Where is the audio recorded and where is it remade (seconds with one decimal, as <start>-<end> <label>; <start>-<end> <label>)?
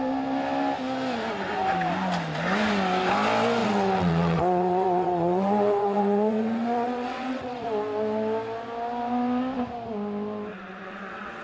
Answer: 0.0-3.6 recorded; 3.6-7.6 remade; 7.6-10.5 recorded; 10.5-11.4 remade